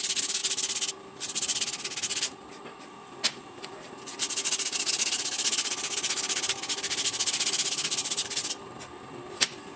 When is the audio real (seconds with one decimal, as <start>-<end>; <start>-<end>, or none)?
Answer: 0.0-9.8